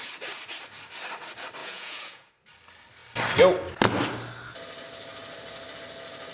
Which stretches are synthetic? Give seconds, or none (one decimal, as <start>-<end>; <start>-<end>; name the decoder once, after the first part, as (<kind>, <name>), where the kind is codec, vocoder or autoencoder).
1.6-2.3 (vocoder, Vocos)